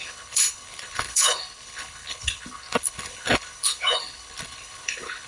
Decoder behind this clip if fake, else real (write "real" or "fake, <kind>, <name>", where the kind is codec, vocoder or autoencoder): fake, codec, HILCodec